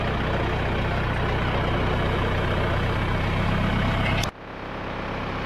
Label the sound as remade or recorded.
recorded